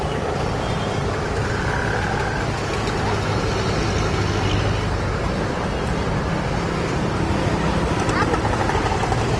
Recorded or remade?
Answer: recorded